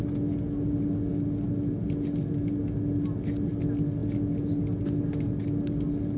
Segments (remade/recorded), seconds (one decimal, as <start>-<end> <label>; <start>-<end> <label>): 0.0-6.2 recorded